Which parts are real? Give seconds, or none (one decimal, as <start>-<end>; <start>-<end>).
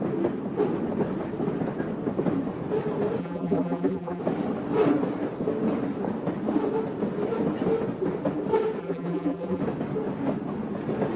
0.0-3.2; 4.2-8.8; 9.6-11.2